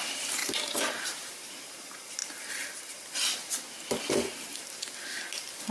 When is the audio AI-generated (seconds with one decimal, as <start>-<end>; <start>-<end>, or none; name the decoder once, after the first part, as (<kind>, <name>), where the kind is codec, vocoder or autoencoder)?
0.4-1.5 (vocoder, BigVGAN v2)